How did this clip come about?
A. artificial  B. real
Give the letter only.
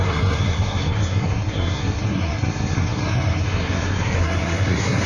A